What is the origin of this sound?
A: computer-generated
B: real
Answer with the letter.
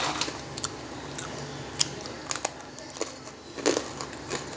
B